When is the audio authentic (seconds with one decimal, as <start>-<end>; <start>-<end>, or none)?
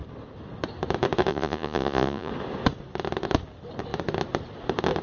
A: 0.0-1.3; 2.3-5.0